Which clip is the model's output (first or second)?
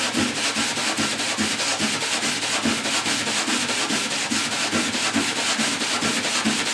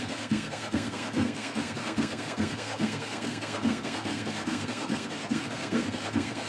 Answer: second